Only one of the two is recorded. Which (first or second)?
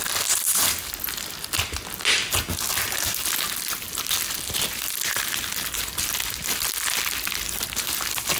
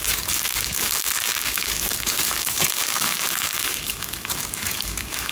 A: first